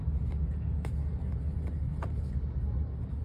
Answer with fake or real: real